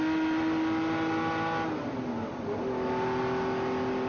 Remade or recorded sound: recorded